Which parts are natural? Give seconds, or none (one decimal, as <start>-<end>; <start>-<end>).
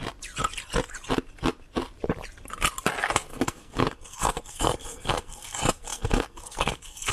0.0-3.0